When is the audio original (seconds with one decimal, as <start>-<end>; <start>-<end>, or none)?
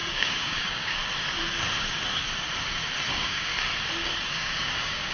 1.0-3.1; 3.5-4.3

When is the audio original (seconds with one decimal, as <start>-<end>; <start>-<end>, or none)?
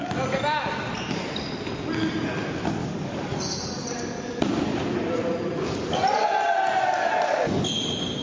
0.0-2.8; 3.4-8.2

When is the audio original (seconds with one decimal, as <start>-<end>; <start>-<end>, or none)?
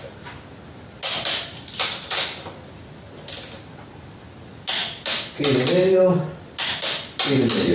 0.0-7.7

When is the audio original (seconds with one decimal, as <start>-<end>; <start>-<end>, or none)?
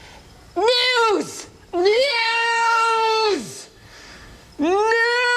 0.0-1.8; 4.5-5.4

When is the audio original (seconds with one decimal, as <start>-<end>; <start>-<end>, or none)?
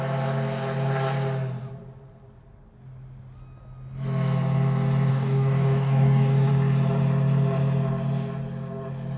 0.0-5.1; 6.5-9.2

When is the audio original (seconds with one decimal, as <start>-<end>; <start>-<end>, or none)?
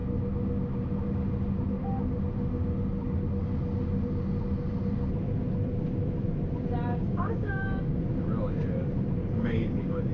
0.0-6.9; 8.0-9.2